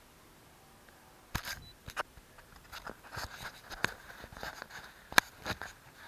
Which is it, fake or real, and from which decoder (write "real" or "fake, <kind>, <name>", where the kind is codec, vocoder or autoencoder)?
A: real